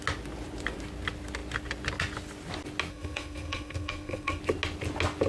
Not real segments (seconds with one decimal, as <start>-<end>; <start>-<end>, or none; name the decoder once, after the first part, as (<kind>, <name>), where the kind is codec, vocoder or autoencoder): 2.9-4.4 (codec, SNAC)